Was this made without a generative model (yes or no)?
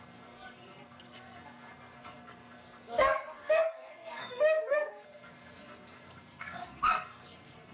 no